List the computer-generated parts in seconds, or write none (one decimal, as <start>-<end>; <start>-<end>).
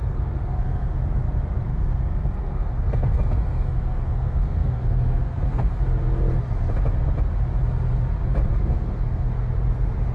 0.0-1.0; 1.7-5.7; 8.5-9.3